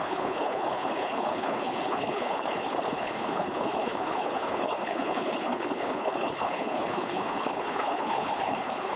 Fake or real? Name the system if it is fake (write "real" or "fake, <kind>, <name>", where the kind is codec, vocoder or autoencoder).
fake, codec, HILCodec